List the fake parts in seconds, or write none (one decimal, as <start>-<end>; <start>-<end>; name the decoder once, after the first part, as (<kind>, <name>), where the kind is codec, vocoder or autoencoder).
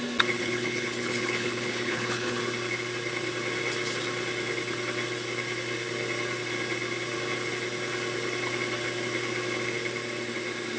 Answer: 0.4-2.4 (codec, HILCodec)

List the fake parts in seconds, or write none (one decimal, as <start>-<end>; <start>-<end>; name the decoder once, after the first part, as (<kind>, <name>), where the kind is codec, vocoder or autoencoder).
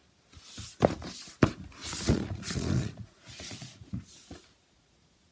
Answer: 1.8-5.3 (vocoder, Vocos)